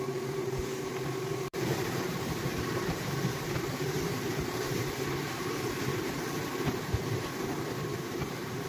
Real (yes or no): no